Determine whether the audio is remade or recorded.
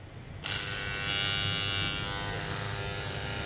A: recorded